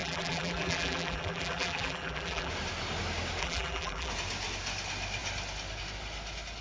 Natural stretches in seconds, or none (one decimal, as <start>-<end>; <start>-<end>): 2.5-3.4; 4.1-6.6